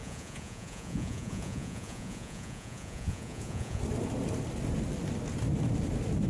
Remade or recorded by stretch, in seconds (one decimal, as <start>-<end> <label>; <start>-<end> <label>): 0.0-3.8 remade; 3.8-6.3 recorded

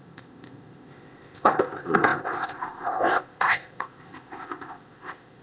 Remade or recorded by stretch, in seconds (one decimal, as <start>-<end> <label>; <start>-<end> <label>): 0.0-5.4 remade

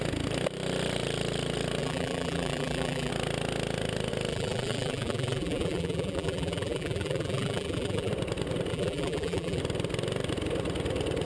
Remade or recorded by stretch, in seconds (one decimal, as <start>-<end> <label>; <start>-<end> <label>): 0.0-1.8 recorded; 1.8-3.1 remade; 3.1-4.3 recorded; 4.3-8.1 remade; 8.1-8.7 recorded; 8.7-9.6 remade; 9.6-11.2 recorded

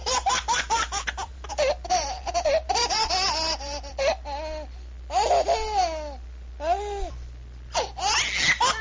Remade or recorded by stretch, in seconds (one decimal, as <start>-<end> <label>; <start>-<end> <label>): 0.0-1.5 remade; 1.5-1.9 recorded; 1.9-3.9 remade; 3.9-8.8 recorded